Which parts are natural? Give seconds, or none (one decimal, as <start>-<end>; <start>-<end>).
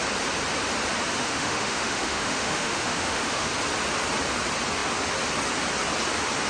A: 0.0-1.2; 3.5-6.5